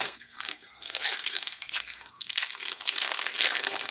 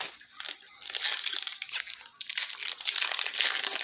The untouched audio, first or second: second